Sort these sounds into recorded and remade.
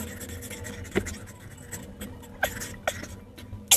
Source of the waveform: recorded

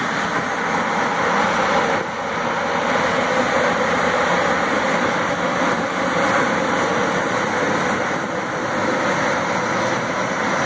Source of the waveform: recorded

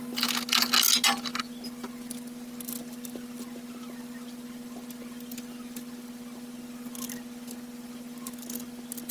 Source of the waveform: recorded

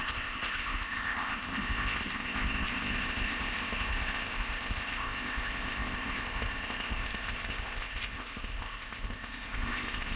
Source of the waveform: remade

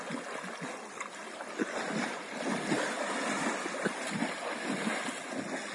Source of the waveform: recorded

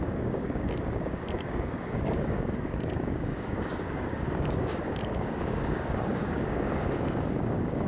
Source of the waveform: remade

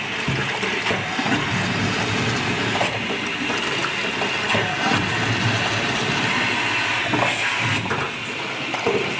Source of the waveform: recorded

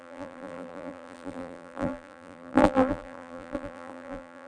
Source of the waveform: remade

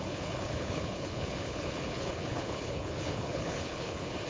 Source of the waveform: remade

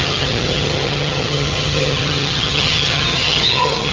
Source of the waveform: remade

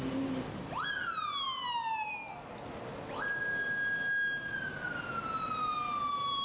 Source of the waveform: recorded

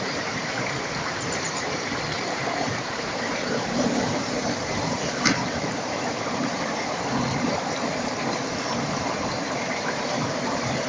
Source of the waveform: remade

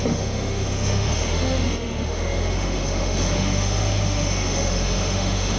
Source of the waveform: remade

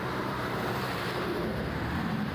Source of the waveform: remade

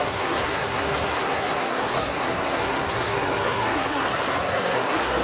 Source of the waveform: remade